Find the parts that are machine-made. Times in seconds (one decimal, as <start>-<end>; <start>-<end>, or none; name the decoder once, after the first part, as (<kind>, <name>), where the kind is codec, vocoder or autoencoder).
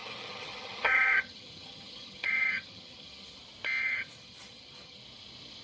0.0-3.4 (vocoder, HiFi-GAN); 3.8-5.0